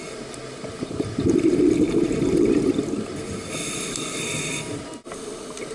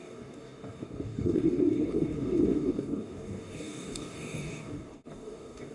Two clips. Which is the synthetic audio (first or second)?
second